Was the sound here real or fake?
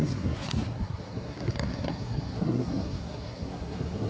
fake